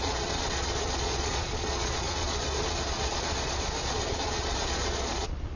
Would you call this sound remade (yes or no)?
yes